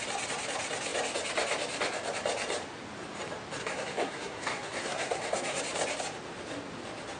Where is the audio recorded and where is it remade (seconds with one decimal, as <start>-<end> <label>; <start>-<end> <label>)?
0.0-3.6 recorded; 3.6-5.6 remade; 5.6-7.2 recorded